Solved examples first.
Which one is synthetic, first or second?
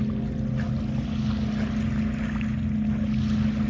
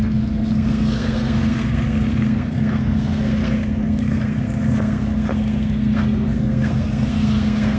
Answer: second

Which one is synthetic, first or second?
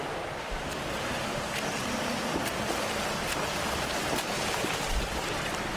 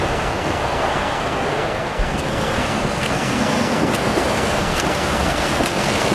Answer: second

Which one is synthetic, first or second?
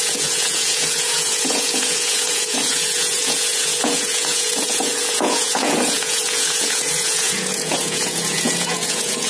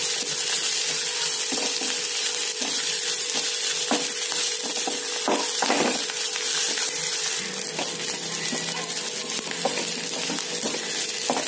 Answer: first